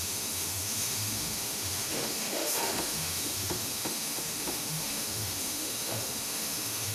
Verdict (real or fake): fake